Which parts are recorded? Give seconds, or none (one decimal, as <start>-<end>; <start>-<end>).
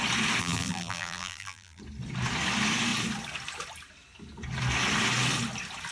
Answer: 0.0-0.4; 1.8-5.9